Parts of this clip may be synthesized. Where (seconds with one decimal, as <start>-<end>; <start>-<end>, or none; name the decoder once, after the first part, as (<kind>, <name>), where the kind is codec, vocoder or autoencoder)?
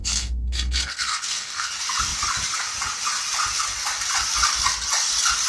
0.0-1.7 (codec, SNAC)